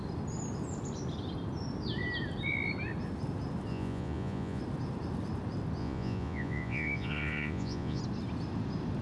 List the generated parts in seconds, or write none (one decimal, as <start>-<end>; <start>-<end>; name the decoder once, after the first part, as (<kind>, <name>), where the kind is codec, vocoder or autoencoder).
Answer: 3.7-4.6 (vocoder, Vocos); 5.8-8.0